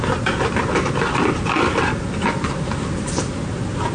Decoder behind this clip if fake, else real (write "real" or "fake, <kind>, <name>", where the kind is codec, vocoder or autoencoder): real